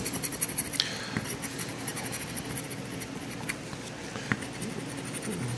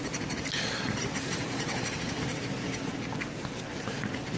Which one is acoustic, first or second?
first